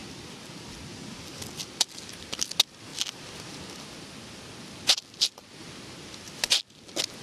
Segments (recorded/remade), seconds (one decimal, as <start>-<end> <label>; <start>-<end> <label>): 0.0-7.2 recorded